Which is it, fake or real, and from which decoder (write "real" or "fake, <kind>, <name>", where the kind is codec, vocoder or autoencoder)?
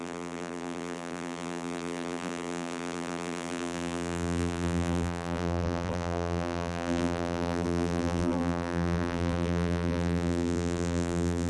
fake, vocoder, BigVGAN v2